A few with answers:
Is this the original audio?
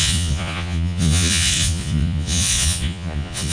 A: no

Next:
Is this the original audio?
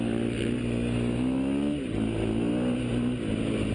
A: yes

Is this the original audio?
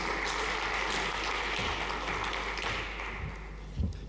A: yes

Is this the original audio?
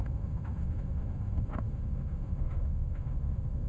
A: no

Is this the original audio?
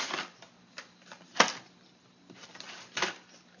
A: yes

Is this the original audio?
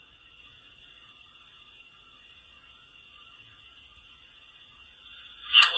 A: no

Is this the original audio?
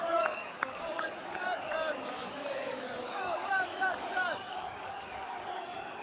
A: no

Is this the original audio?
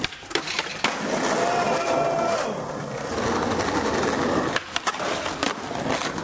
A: yes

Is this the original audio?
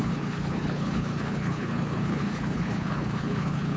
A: no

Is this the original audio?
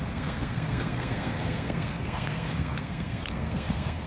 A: no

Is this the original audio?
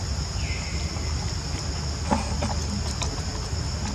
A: yes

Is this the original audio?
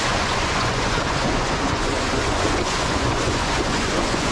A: no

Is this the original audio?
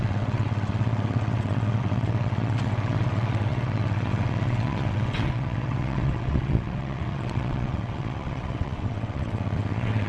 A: no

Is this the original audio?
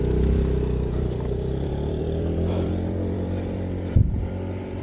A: no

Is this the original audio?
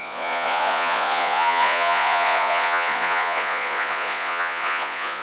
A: no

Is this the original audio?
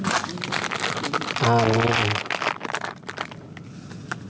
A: yes